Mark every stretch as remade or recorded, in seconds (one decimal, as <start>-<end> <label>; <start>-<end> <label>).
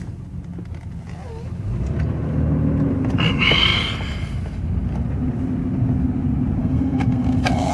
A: 0.0-6.6 recorded; 6.6-7.7 remade